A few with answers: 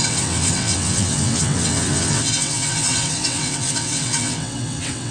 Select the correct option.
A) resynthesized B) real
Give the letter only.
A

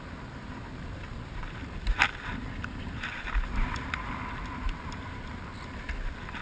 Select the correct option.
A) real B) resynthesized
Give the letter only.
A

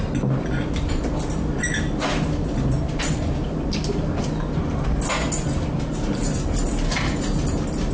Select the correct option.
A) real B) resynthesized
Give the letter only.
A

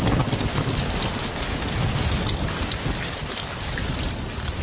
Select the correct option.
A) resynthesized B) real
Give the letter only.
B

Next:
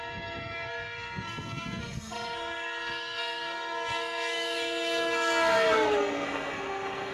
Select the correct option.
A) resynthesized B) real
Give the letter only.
A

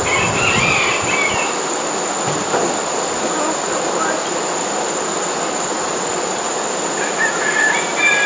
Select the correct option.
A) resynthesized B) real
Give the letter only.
B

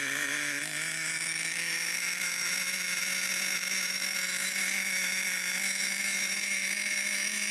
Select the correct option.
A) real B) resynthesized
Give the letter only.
B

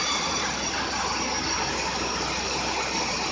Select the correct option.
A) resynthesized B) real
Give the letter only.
B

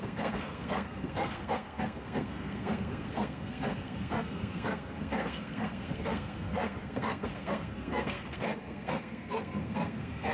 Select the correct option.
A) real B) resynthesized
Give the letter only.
B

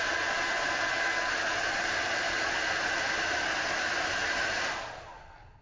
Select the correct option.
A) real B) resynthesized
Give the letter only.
A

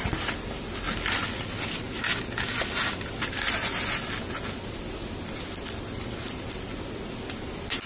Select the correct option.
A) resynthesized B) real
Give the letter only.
B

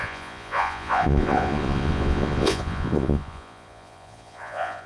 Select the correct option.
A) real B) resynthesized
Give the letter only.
B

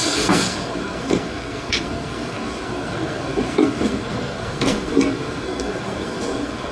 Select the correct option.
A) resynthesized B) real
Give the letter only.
A